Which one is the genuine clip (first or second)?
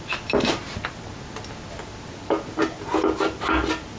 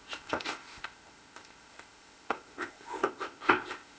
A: first